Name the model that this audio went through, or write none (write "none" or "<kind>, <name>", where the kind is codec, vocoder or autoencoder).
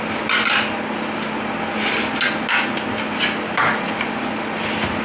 none